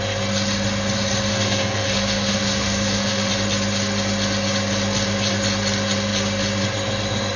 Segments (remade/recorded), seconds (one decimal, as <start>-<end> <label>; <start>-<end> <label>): 0.0-1.3 recorded; 1.3-3.3 remade; 3.3-7.4 recorded